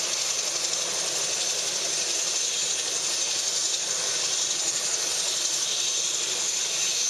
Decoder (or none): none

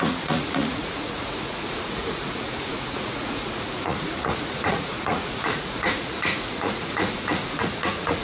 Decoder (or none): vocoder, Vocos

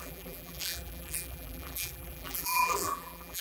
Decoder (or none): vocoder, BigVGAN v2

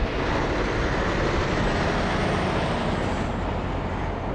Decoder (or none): none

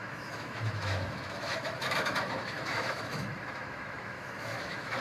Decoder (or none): autoencoder, DAC-VAE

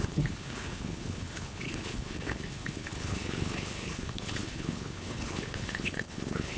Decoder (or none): codec, HILCodec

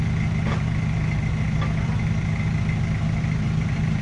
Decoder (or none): none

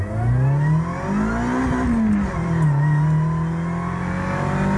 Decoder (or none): none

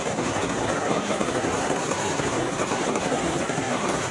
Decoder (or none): codec, SNAC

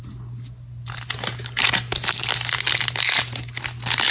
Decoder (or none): none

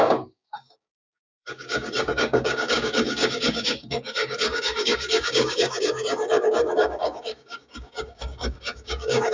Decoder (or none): codec, DAC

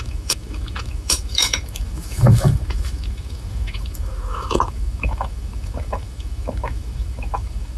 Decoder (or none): autoencoder, DAC-VAE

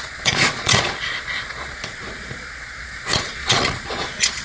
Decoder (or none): vocoder, Vocos